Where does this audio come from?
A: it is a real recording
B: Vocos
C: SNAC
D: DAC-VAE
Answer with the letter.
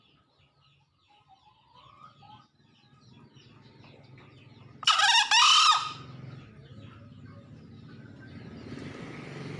A